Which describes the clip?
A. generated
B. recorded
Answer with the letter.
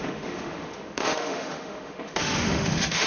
A